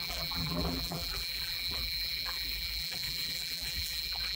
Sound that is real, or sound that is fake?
fake